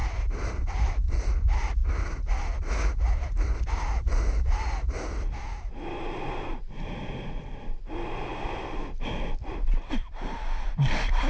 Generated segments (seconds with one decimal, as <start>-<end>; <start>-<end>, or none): 0.0-1.4; 8.3-10.9